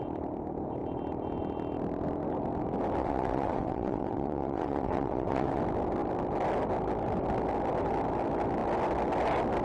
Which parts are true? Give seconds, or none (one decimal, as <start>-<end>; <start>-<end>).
0.0-3.0; 5.6-9.6